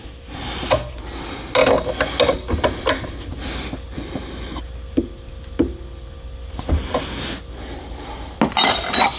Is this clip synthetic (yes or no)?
no